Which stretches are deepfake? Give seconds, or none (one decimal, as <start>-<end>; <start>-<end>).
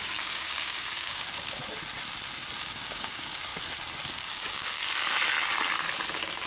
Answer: 0.0-1.6; 2.6-3.5; 4.2-4.8; 6.1-6.5